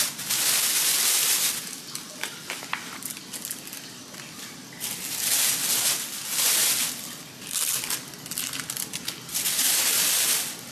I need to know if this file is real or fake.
real